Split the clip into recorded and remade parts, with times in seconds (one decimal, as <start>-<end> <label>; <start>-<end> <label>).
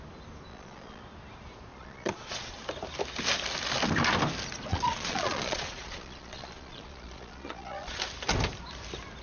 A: 0.0-0.5 recorded; 0.5-1.0 remade; 1.0-1.7 recorded; 1.7-2.6 remade; 2.6-4.7 recorded; 4.7-8.0 remade; 8.0-9.2 recorded